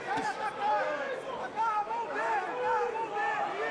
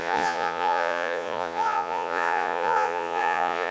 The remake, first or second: second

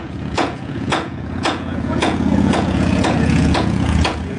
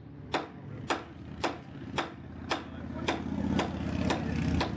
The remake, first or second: first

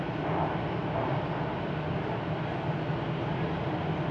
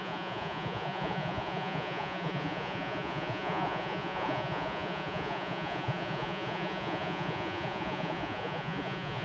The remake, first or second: second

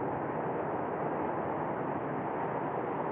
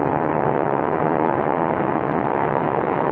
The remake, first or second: second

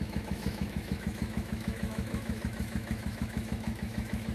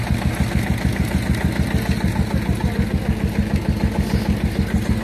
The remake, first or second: first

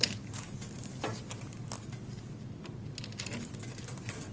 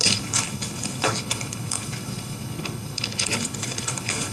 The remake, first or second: second